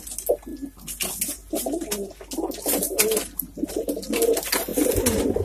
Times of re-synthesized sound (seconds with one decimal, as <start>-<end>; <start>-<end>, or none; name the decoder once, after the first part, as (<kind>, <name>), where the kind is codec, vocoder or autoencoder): none